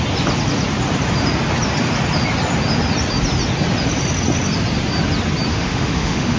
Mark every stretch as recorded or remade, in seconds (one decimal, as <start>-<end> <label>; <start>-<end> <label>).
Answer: 0.0-5.5 recorded; 5.5-6.4 remade